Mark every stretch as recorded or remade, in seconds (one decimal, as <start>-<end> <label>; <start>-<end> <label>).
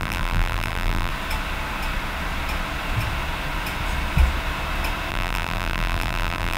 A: 0.0-1.1 remade; 1.1-5.1 recorded; 5.1-6.6 remade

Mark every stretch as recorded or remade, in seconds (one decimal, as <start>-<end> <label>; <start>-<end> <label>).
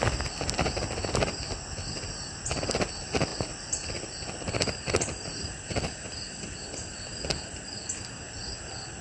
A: 0.0-3.3 recorded; 3.3-8.1 remade; 8.1-9.0 recorded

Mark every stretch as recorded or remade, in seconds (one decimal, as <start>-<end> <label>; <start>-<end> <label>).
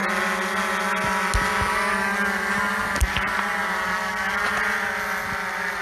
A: 0.0-3.1 recorded; 3.1-3.6 remade; 3.6-5.8 recorded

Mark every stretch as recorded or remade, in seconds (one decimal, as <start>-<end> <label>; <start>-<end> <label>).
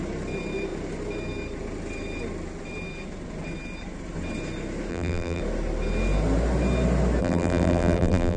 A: 0.0-4.9 recorded; 4.9-5.4 remade; 5.4-7.2 recorded; 7.2-8.4 remade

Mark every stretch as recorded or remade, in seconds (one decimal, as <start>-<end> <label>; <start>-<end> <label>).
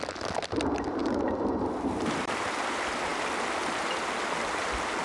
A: 0.0-1.0 recorded; 1.0-2.3 remade; 2.3-5.0 recorded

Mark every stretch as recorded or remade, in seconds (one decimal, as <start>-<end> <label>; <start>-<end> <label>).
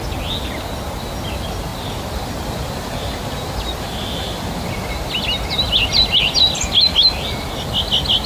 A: 0.0-8.3 recorded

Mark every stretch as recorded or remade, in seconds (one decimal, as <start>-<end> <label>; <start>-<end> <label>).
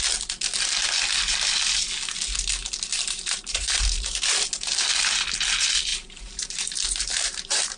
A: 0.0-2.9 recorded; 2.9-4.5 remade; 4.5-5.9 recorded; 5.9-7.8 remade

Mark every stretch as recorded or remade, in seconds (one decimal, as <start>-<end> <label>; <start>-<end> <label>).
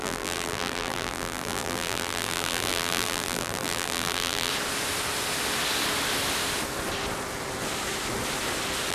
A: 0.0-4.5 remade; 4.5-8.9 recorded